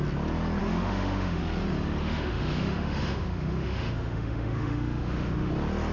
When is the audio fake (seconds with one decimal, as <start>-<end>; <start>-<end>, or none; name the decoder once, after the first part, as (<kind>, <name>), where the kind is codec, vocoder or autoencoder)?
0.6-1.4 (autoencoder, DAC-VAE); 2.0-5.5